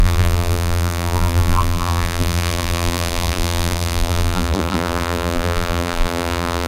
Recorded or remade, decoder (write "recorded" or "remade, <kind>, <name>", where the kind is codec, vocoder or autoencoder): remade, vocoder, BigVGAN v2